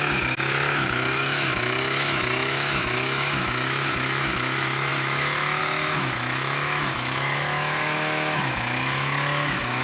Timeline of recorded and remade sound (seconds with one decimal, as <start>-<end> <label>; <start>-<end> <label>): 0.0-9.8 remade